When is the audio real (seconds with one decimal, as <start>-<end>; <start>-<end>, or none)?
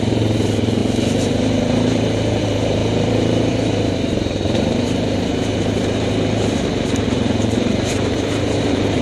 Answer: 0.8-1.6